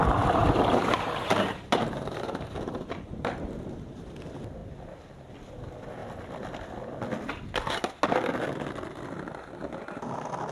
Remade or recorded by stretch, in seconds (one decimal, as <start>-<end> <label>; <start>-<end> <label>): 0.0-0.4 recorded; 0.4-4.1 remade; 4.1-10.5 recorded